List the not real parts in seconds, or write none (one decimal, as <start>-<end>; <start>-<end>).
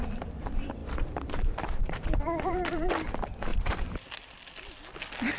0.8-2.9; 3.5-4.1